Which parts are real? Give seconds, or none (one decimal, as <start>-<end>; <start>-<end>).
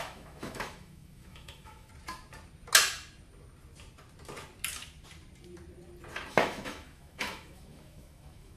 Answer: 1.9-6.3